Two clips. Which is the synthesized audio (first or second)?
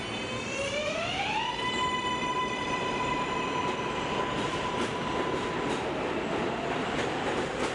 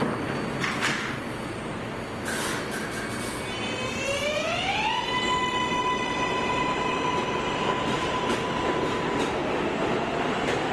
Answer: first